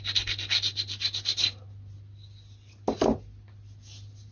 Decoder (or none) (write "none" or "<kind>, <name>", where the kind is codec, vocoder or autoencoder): none